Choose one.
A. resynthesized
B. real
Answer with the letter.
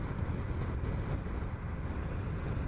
B